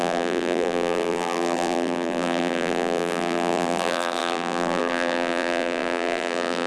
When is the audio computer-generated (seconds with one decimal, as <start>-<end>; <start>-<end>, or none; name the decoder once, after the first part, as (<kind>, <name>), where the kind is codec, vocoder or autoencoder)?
0.0-6.7 (vocoder, BigVGAN v2)